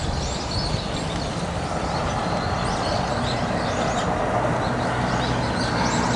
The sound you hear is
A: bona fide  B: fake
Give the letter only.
A